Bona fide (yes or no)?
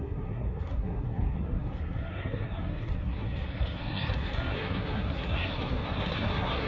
no